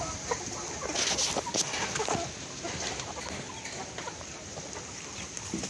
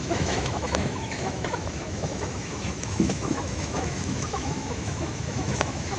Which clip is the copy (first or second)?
second